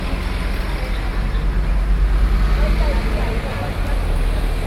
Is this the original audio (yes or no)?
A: yes